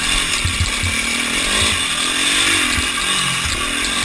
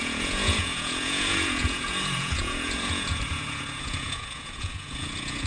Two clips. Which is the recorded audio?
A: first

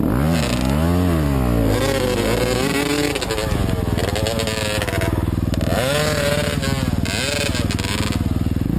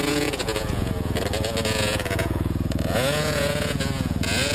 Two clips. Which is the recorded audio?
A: first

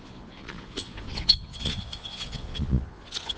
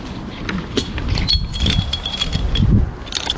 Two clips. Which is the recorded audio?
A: second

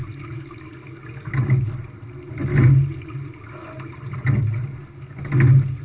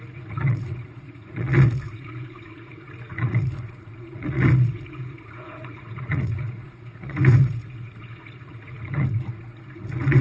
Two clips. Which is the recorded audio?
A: first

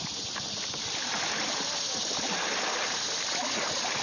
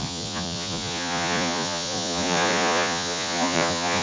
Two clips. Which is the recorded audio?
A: first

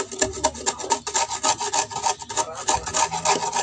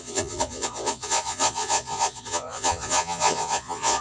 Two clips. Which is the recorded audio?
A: first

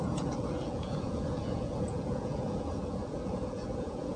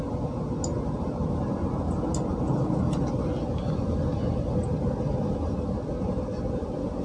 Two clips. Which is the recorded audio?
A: second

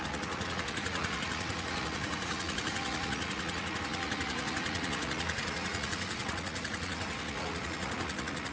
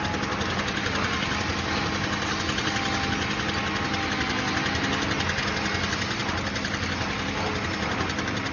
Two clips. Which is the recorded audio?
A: second